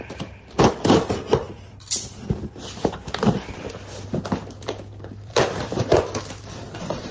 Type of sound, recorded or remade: remade